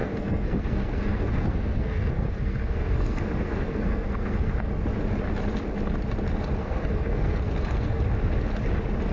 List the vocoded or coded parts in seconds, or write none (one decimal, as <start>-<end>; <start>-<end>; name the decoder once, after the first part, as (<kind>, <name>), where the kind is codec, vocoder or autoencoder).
0.0-4.7 (codec, SNAC); 6.6-8.0